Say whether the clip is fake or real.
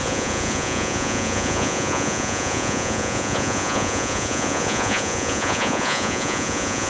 fake